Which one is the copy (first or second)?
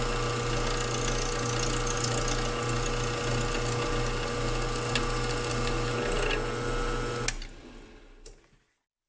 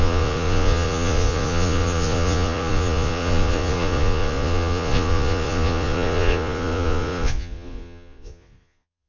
second